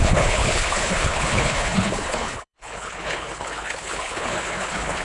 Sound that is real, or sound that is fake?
fake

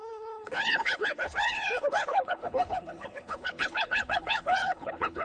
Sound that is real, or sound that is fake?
fake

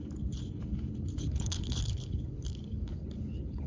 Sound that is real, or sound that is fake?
fake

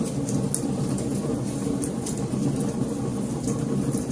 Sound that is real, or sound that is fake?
real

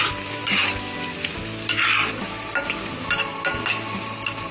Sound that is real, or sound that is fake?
real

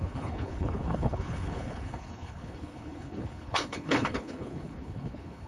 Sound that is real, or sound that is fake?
fake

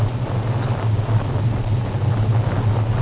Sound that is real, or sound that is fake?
real